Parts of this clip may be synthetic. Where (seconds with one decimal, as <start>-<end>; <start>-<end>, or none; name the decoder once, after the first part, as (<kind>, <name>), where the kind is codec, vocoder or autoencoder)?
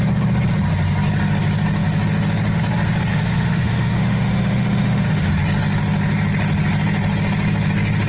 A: 3.1-5.3 (autoencoder, DAC-VAE)